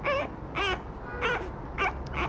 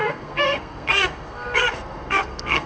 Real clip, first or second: first